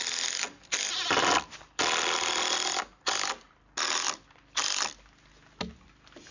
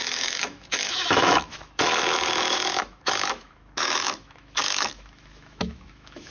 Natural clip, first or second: first